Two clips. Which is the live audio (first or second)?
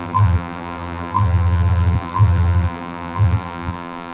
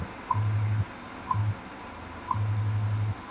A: second